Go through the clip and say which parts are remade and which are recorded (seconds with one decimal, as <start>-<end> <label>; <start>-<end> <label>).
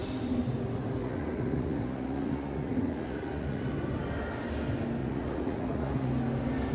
0.0-1.0 recorded; 1.0-3.7 remade; 3.7-5.0 recorded; 5.0-6.1 remade; 6.1-6.7 recorded